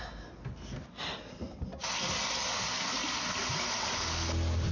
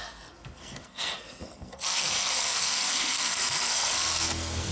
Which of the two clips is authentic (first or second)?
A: first